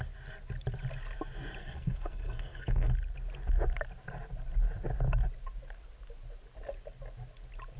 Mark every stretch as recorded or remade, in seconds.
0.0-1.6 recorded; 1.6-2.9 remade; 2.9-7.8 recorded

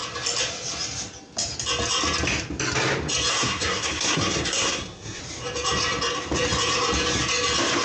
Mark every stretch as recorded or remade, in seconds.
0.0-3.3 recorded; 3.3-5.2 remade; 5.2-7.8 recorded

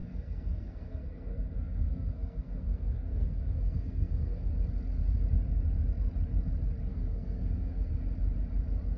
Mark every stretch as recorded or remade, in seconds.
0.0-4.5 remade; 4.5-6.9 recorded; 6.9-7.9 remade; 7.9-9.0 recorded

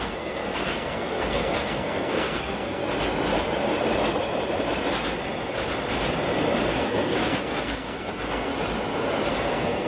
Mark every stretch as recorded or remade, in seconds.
0.0-2.8 remade; 2.8-6.7 recorded; 6.7-8.5 remade; 8.5-9.3 recorded; 9.3-9.9 remade

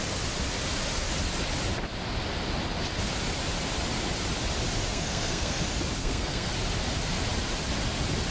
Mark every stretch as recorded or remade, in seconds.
0.0-4.9 recorded; 4.9-5.6 remade; 5.6-6.0 recorded; 6.0-6.5 remade; 6.5-8.3 recorded